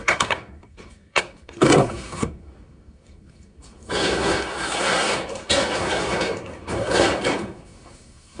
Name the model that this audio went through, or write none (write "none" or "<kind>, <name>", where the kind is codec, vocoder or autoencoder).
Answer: codec, SNAC